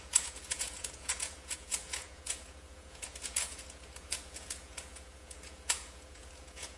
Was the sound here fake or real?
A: fake